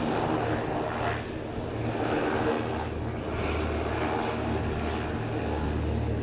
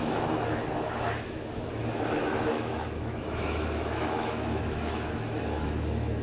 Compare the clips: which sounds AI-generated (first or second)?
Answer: second